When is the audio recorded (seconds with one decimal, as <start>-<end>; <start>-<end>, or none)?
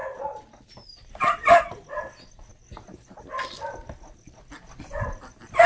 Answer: 0.0-5.7